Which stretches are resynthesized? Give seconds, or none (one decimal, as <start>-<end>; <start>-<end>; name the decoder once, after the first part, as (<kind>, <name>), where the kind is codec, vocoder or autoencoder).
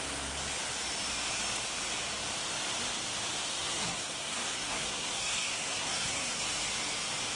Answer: 3.5-6.4 (codec, SNAC)